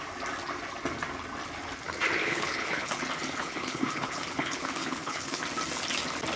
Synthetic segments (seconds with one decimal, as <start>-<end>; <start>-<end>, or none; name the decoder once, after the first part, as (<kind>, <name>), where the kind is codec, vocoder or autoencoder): 2.2-3.0 (codec, HILCodec); 3.4-5.4